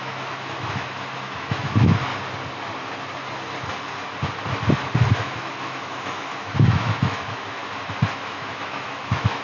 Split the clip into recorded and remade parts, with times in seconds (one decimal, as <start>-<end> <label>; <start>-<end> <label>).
0.0-2.1 remade; 2.1-5.2 recorded; 5.2-7.6 remade; 7.6-8.1 recorded; 8.1-9.4 remade